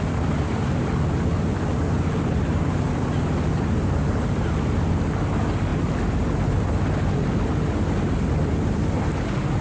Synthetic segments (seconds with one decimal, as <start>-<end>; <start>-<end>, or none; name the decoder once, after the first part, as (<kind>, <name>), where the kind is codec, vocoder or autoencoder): none